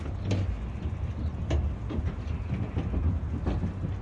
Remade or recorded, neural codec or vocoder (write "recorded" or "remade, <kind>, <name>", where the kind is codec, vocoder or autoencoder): recorded